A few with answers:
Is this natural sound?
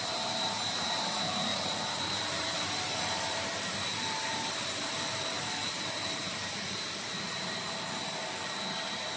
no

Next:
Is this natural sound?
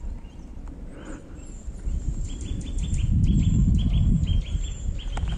yes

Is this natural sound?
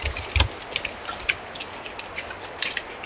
yes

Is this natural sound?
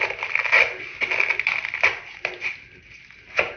yes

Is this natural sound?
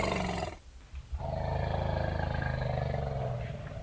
yes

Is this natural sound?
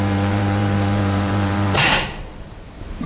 no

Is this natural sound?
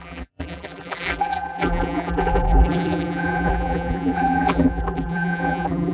no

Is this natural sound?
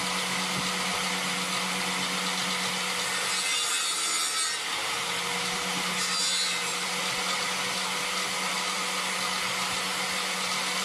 yes